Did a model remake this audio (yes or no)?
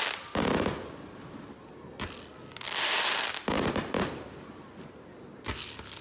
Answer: no